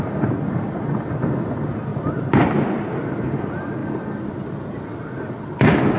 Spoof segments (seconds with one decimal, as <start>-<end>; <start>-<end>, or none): none